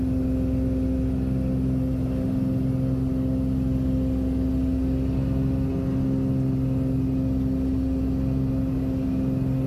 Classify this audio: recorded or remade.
recorded